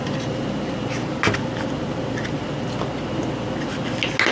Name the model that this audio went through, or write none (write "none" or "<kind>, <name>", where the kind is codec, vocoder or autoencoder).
none